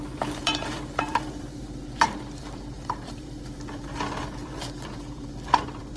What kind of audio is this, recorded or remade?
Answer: remade